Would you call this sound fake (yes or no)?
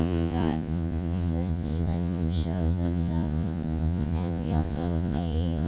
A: yes